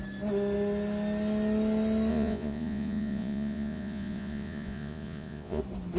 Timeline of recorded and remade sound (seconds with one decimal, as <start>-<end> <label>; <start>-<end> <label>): 0.0-2.1 recorded; 2.1-5.6 remade; 5.6-6.0 recorded